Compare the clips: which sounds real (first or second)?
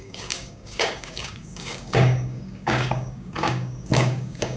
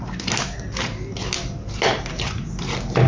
second